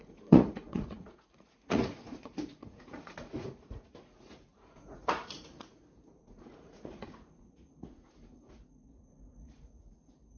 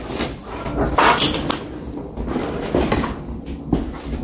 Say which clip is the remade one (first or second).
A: first